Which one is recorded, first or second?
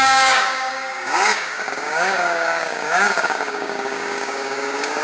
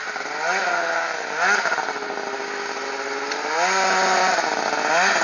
second